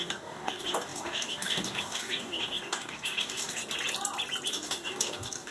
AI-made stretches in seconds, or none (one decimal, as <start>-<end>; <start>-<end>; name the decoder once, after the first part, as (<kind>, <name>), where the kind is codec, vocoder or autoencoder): 0.0-3.6 (codec, DAC); 4.5-5.5